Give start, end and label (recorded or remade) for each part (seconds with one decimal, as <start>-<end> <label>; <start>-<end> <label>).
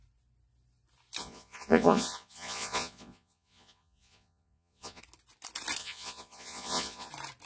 0.0-1.2 recorded; 1.2-5.0 remade; 5.0-5.8 recorded; 5.8-7.1 remade; 7.1-7.5 recorded